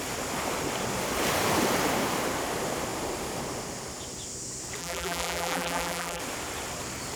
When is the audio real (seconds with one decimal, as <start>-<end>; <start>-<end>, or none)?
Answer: 0.0-4.8; 6.2-7.2